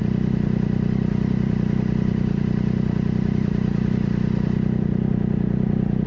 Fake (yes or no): no